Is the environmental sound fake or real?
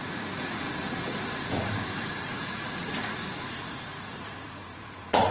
fake